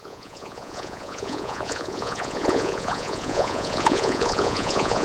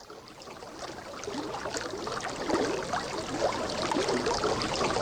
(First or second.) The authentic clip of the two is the second